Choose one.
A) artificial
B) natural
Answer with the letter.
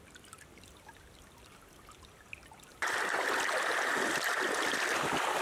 B